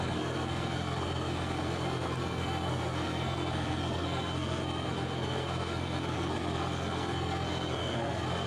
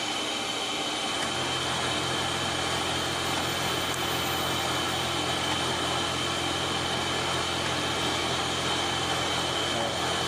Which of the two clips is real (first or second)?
second